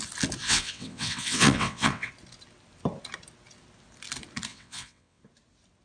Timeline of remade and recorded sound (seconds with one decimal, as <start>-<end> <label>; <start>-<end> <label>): 0.0-0.4 recorded; 0.4-2.1 remade; 2.1-4.5 recorded; 4.5-5.2 remade; 5.2-5.8 recorded